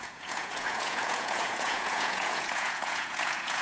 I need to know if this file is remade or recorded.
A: remade